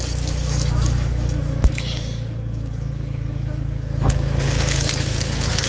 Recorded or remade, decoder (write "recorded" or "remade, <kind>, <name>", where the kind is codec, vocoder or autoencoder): remade, codec, DAC